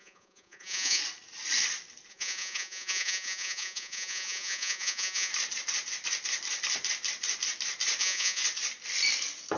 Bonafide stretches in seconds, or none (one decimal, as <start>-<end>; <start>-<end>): 1.0-2.1; 5.3-8.0; 8.4-9.6

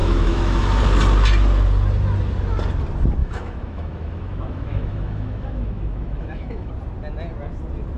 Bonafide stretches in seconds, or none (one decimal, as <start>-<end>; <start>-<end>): 0.8-3.2; 6.7-8.0

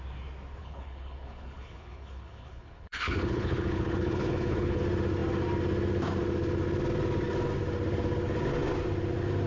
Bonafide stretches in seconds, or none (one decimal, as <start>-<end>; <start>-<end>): 0.0-0.6; 4.8-9.5

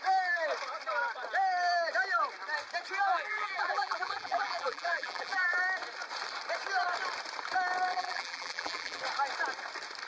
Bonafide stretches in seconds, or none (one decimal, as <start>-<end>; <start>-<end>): 0.0-3.1; 5.6-7.9; 9.0-10.1

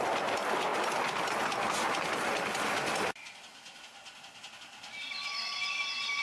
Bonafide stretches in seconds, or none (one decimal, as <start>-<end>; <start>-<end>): 0.0-6.2

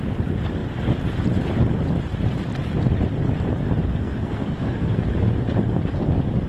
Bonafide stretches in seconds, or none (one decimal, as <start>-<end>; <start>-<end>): 0.0-4.0; 5.0-6.5

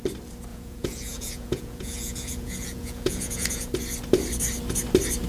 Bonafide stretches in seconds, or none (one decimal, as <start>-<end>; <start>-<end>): 0.0-0.5; 3.7-5.3